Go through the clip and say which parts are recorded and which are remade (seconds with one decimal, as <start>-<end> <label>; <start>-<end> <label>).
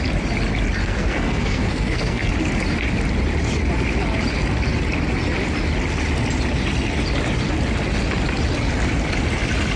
0.0-0.8 recorded; 0.8-2.3 remade; 2.3-9.8 recorded